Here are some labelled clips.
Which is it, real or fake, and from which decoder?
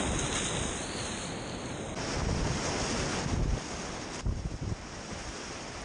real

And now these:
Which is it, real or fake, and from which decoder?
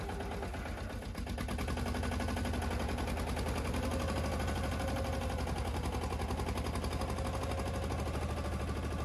real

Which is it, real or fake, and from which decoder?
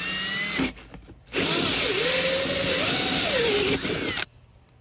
real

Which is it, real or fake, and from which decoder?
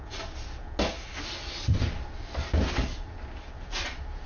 real